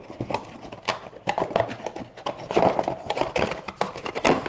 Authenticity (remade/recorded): recorded